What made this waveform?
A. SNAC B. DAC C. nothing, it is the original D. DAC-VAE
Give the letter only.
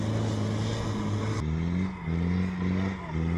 C